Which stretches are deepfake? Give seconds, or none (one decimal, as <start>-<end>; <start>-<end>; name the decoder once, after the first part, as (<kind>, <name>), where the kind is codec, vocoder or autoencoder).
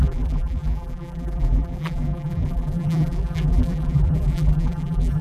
0.0-5.2 (vocoder, BigVGAN v2)